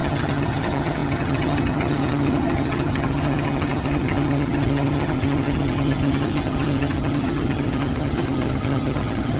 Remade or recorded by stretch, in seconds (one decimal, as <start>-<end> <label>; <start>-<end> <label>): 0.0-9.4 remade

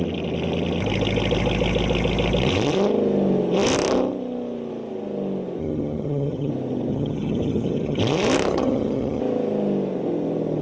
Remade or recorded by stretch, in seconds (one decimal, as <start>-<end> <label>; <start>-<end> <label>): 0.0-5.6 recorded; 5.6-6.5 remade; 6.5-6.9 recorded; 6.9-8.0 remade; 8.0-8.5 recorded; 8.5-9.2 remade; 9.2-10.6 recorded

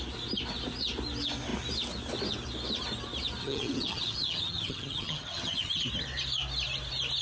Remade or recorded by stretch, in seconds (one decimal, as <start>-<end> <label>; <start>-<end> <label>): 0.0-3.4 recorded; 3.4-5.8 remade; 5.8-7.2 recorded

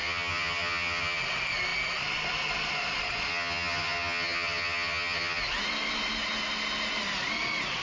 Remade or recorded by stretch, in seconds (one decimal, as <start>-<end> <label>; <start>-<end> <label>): 0.0-1.2 remade; 1.2-3.3 recorded; 3.3-5.4 remade; 5.4-7.8 recorded